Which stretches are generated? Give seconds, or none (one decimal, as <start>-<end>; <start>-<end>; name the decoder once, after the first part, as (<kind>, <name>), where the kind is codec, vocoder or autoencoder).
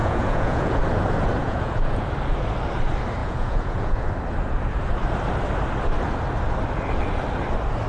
0.0-0.8 (vocoder, Vocos); 1.4-2.0; 3.2-4.1